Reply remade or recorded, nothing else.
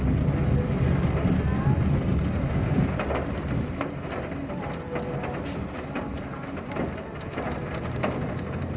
recorded